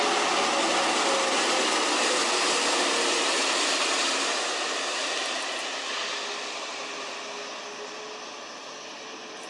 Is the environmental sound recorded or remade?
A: recorded